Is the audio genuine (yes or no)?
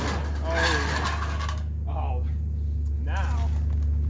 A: yes